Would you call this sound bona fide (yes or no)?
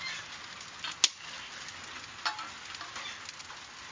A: yes